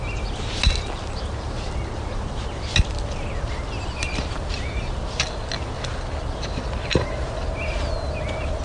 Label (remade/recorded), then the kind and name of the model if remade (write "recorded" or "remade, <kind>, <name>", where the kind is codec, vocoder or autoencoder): recorded